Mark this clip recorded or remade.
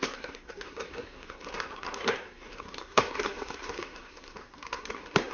remade